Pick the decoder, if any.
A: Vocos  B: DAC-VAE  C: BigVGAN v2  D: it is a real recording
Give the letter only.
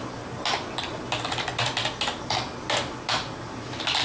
D